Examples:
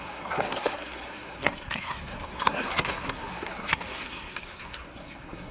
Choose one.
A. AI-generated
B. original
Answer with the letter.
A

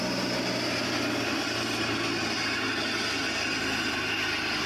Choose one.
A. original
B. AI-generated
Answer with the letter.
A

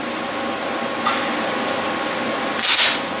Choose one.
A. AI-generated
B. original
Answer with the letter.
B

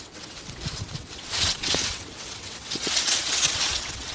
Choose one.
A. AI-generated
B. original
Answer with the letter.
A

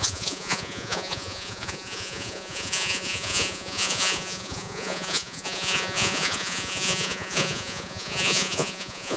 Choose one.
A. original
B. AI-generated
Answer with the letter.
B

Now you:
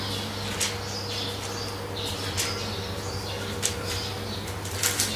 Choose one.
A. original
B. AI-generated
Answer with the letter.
A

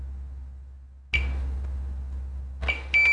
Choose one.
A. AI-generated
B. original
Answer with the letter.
B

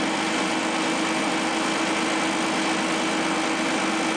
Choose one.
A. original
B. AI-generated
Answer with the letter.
A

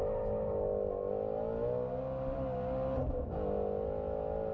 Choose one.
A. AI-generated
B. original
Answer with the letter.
B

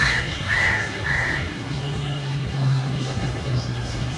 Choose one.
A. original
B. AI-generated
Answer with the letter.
B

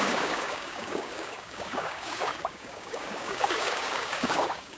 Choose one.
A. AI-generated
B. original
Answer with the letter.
A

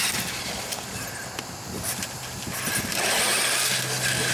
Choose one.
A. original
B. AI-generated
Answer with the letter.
A